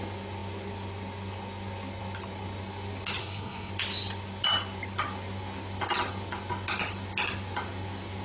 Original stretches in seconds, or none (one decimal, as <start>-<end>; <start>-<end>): 0.0-3.2; 3.7-8.2